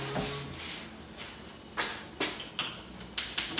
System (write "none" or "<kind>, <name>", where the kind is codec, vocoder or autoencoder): none